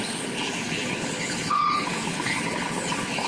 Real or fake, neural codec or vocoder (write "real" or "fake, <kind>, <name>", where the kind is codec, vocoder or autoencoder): fake, codec, HILCodec